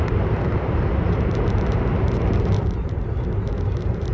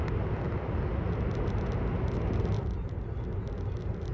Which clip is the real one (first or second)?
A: second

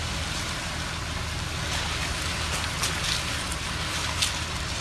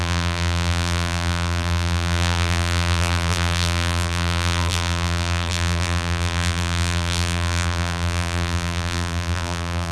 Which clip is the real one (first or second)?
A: first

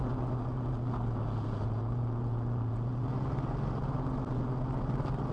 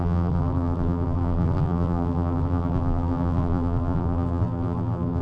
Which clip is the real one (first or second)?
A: first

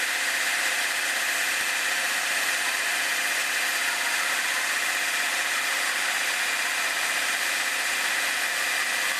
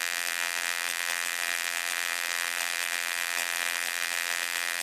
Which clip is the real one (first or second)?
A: first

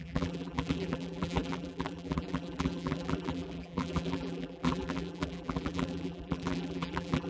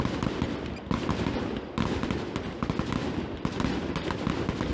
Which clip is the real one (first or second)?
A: second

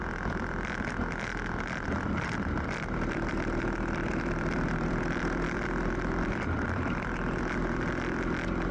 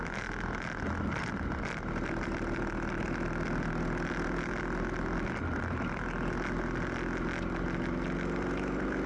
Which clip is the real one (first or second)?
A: second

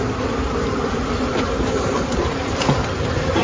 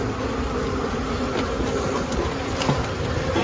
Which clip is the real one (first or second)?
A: second